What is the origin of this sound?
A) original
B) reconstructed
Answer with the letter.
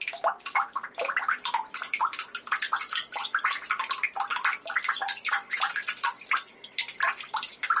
B